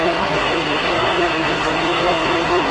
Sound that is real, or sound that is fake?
fake